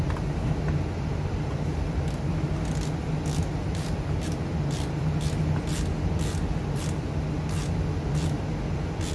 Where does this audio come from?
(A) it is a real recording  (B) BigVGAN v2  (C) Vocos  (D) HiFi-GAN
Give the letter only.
A